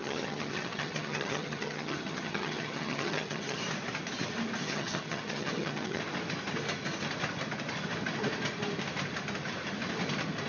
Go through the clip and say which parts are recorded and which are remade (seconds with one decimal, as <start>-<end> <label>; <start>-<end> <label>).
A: 0.0-3.6 remade; 3.6-4.6 recorded; 4.6-6.0 remade; 6.0-10.5 recorded

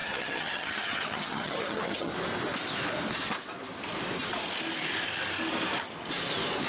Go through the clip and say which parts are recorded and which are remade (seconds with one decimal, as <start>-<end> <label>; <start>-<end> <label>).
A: 0.0-2.1 remade; 2.1-6.7 recorded

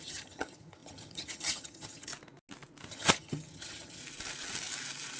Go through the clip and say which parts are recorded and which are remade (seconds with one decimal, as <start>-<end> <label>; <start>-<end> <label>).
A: 0.0-2.1 remade; 2.1-2.9 recorded; 2.9-4.0 remade; 4.0-5.2 recorded

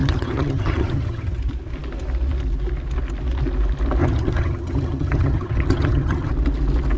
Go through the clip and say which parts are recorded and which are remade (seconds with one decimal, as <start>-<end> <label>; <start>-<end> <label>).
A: 0.0-1.4 remade; 1.4-4.0 recorded; 4.0-6.3 remade; 6.3-7.0 recorded